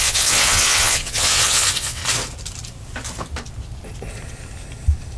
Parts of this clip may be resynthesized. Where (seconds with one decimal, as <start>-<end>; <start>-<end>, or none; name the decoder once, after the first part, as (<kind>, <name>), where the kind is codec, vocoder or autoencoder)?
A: 0.0-2.0 (vocoder, WaveNeXt)